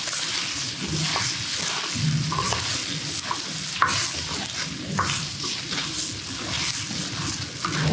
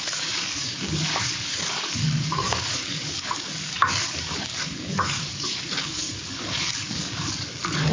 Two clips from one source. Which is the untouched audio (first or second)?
first